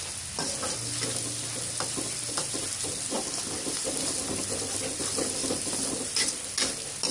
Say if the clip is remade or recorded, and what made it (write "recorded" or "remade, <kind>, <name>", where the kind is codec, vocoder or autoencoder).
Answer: recorded